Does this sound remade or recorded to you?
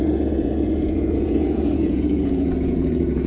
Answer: remade